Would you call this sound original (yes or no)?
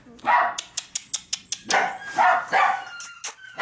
yes